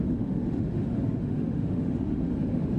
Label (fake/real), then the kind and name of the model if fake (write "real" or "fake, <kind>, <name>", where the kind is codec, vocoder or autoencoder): fake, autoencoder, DAC-VAE